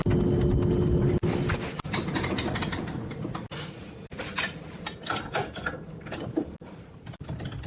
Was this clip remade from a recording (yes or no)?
no